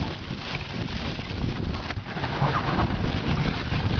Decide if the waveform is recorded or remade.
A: recorded